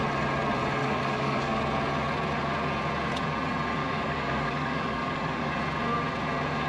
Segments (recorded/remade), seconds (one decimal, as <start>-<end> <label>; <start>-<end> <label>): 0.0-0.8 recorded; 0.8-1.6 remade; 1.6-3.8 recorded; 3.8-5.5 remade; 5.5-6.7 recorded

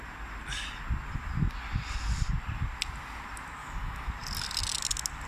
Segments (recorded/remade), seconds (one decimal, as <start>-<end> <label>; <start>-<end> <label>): 0.0-3.6 recorded; 3.6-4.1 remade; 4.1-5.3 recorded

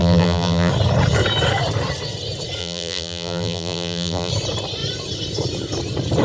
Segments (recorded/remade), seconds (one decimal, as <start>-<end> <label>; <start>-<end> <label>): 0.0-0.7 remade; 0.7-2.6 recorded; 2.6-4.3 remade; 4.3-6.2 recorded